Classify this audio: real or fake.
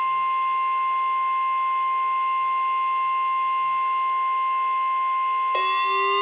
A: real